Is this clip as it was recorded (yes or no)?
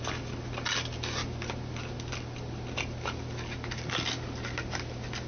yes